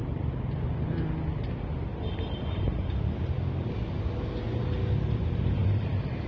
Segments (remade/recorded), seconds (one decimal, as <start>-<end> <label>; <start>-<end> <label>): 0.0-0.6 remade; 0.6-1.9 recorded; 1.9-2.6 remade; 2.6-5.6 recorded; 5.6-6.3 remade